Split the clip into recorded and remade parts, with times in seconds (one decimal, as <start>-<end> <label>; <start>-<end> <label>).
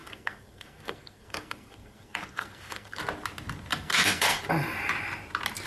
0.0-3.0 remade; 3.0-3.7 recorded; 3.7-4.4 remade; 4.4-5.7 recorded